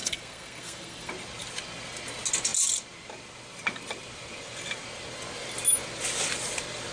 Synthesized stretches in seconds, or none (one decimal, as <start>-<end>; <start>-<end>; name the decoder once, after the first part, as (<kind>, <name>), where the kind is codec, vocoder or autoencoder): 0.0-1.1 (codec, SNAC)